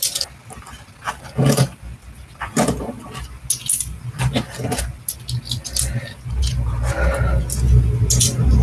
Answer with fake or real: real